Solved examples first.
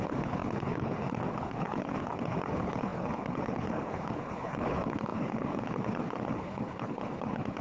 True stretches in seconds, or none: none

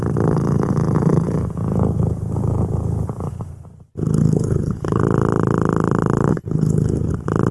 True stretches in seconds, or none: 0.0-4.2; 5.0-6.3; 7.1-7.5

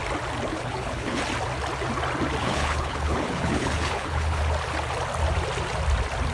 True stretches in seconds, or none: 0.0-0.5; 1.2-2.4; 4.4-6.3

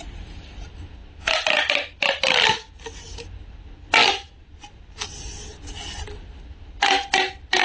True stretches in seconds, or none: 0.0-7.6